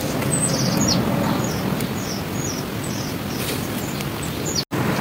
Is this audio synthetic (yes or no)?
no